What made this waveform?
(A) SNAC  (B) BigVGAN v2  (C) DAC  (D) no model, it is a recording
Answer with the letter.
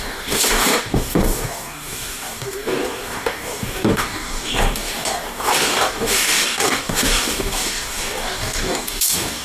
C